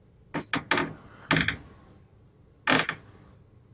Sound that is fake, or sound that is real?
real